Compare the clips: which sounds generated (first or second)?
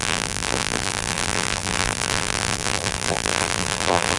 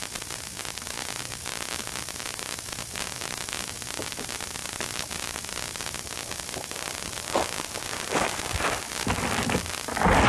first